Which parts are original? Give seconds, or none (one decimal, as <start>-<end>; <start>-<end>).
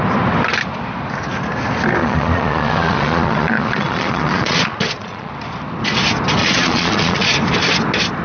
0.0-2.0; 5.3-6.4; 7.3-8.2